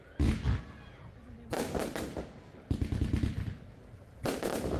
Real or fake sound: real